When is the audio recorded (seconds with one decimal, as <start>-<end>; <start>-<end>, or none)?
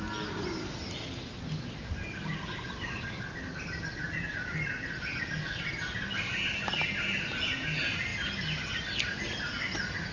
0.0-10.1